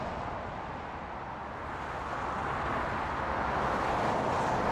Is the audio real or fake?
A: real